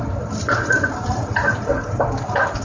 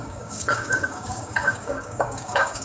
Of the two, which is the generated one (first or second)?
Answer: second